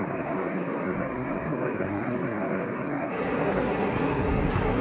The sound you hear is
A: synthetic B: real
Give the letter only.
A